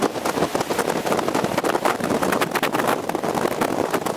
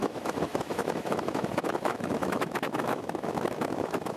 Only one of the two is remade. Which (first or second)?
second